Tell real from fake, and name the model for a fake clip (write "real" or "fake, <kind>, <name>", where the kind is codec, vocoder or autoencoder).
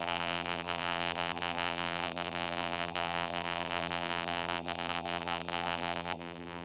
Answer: fake, vocoder, BigVGAN v2